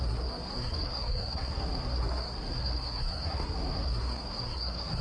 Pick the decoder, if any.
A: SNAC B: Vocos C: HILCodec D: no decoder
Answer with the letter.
A